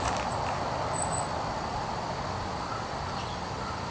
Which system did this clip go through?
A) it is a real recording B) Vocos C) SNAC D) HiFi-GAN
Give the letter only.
A